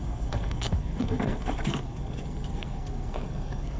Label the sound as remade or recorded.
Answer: remade